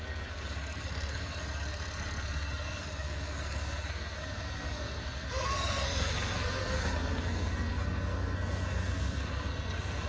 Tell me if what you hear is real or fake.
fake